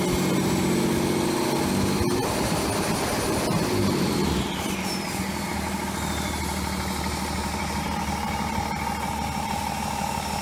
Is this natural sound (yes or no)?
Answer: yes